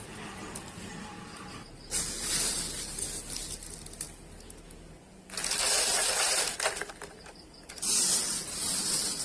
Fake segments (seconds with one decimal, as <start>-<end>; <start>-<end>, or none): none